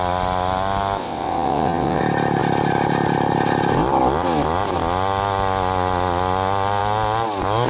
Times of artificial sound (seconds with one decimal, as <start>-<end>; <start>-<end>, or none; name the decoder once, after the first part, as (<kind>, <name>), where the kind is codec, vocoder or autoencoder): 1.0-2.0 (vocoder, WaveNeXt)